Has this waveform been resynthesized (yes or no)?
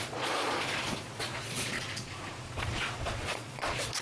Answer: yes